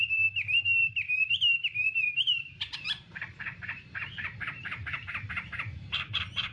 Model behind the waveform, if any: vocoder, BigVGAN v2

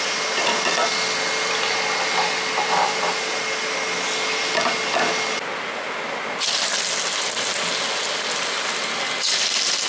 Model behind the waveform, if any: none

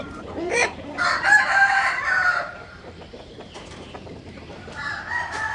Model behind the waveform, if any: vocoder, BigVGAN v2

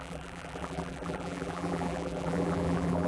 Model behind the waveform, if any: vocoder, BigVGAN v2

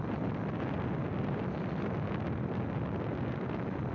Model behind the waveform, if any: none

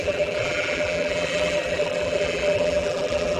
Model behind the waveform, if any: vocoder, BigVGAN v2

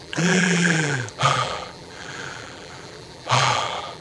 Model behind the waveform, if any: vocoder, BigVGAN v2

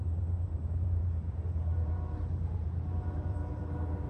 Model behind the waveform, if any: vocoder, BigVGAN v2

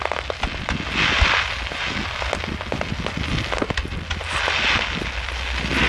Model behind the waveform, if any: none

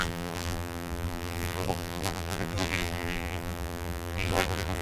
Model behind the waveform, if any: vocoder, BigVGAN v2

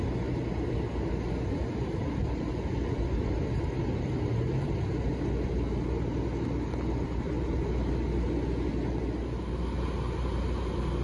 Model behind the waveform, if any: none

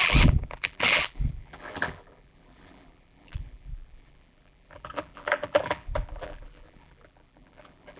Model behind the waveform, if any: vocoder, BigVGAN v2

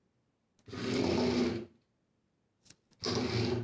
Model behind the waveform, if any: none